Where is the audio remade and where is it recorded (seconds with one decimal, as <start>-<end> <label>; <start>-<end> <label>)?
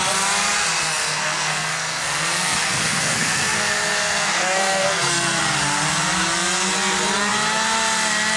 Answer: 0.0-1.0 recorded; 1.0-5.4 remade; 5.4-8.4 recorded